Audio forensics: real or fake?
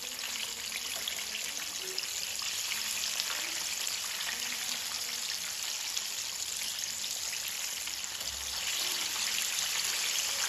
real